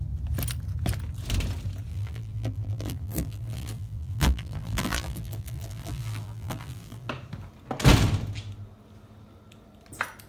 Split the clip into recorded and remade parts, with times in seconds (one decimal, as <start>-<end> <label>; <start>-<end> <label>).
0.0-1.9 recorded; 1.9-7.1 remade; 7.1-10.3 recorded